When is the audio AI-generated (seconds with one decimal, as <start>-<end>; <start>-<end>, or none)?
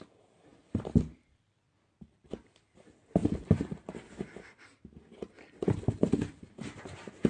none